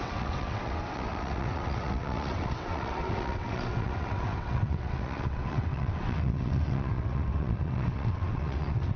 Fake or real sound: fake